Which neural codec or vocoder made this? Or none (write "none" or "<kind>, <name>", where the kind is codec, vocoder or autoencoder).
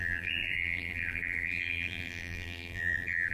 vocoder, BigVGAN v2